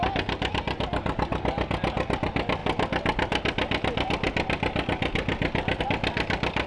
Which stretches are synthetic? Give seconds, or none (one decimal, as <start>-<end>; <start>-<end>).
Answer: none